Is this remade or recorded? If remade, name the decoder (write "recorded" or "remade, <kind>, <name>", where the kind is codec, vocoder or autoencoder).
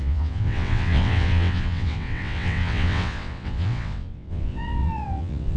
remade, vocoder, WaveNeXt